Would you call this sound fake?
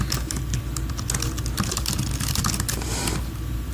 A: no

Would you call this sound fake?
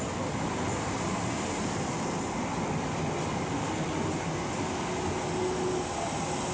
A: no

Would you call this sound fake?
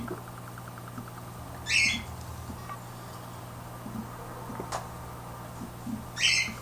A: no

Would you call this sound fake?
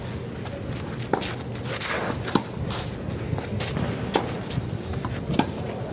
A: no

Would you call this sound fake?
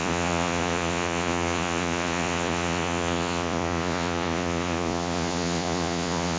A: yes